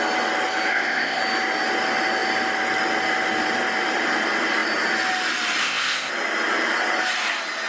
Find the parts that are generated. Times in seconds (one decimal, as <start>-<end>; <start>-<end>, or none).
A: 0.7-1.2; 5.6-6.1

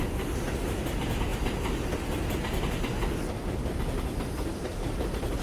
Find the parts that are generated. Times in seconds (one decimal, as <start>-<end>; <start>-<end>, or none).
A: none

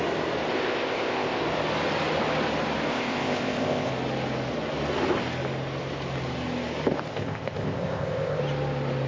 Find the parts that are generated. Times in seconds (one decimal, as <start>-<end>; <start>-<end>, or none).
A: 0.5-1.4; 2.9-3.9; 7.1-8.4

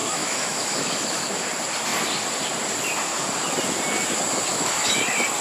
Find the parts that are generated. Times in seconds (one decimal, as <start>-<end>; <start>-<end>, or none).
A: 0.0-1.5; 4.5-5.0

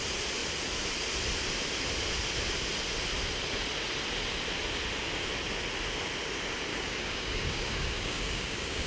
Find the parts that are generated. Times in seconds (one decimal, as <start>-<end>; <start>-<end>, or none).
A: 6.7-8.9